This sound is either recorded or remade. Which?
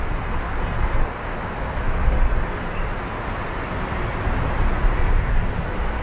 recorded